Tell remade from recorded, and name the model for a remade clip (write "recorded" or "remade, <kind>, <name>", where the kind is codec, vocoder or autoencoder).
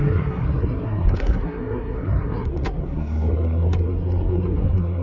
remade, codec, SNAC